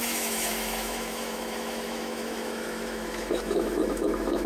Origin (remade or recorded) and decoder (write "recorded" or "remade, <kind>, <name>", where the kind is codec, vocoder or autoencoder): remade, autoencoder, DAC-VAE